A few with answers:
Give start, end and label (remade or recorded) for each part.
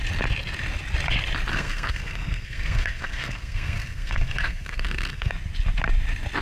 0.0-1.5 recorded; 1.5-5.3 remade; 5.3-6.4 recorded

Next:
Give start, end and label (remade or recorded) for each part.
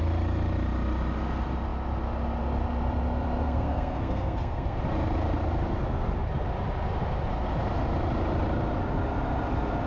0.0-3.4 recorded; 3.4-4.8 remade; 4.8-9.9 recorded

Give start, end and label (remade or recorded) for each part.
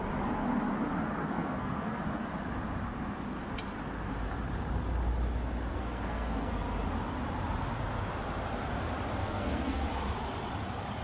0.0-1.2 recorded; 1.2-2.0 remade; 2.0-5.7 recorded; 5.7-6.5 remade; 6.5-9.2 recorded; 9.2-9.8 remade; 9.8-11.0 recorded